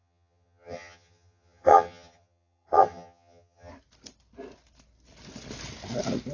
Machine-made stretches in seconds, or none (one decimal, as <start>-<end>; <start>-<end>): 0.0-3.7